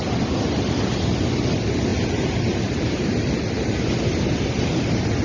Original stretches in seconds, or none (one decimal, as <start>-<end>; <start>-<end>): 0.0-5.2